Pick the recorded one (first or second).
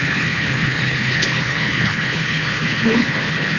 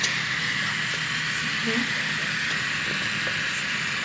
second